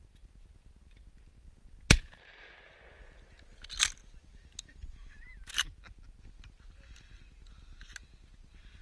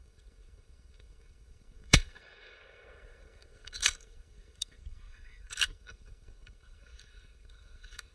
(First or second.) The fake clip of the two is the second